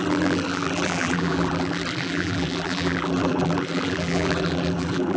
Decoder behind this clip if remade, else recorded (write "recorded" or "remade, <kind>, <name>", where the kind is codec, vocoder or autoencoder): remade, vocoder, BigVGAN v2